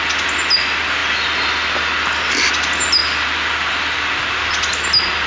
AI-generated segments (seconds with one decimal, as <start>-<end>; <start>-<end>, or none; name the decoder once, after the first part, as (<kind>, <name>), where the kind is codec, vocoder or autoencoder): none